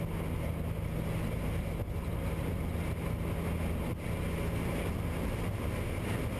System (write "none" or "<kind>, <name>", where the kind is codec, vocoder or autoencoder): none